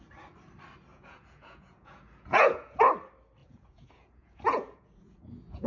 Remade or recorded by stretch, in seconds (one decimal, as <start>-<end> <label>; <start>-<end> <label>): 0.0-0.9 recorded; 0.9-2.8 remade; 2.8-3.4 recorded; 3.4-5.7 remade